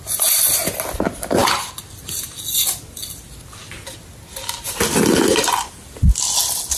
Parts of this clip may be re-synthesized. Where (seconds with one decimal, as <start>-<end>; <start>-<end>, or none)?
none